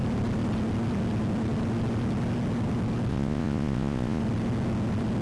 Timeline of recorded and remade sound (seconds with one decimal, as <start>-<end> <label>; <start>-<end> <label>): 0.0-3.1 recorded; 3.1-4.2 remade; 4.2-5.2 recorded